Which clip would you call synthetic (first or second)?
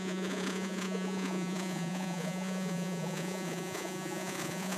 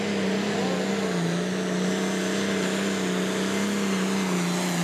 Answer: first